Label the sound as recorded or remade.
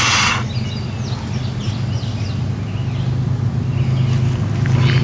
recorded